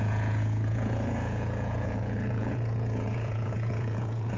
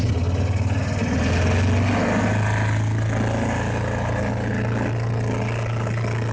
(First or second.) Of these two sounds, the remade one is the first